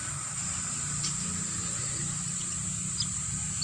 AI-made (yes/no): no